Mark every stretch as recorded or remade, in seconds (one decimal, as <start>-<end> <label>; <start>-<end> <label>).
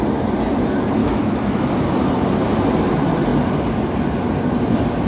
0.0-1.0 recorded; 1.0-1.7 remade; 1.7-5.1 recorded